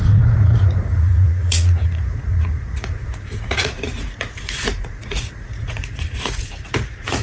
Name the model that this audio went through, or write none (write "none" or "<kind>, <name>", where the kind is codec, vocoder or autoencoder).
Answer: vocoder, Vocos